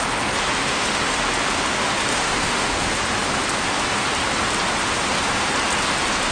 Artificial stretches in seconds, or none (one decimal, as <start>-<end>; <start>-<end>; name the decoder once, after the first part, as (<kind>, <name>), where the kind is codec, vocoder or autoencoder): 0.6-1.2 (autoencoder, DAC-VAE); 2.1-2.7